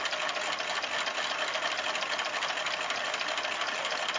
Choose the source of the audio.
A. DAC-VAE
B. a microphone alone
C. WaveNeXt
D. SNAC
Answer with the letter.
B